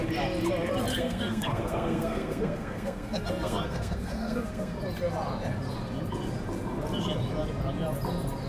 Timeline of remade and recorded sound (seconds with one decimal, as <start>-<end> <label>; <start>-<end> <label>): 0.0-0.9 recorded; 0.9-4.8 remade; 4.8-8.5 recorded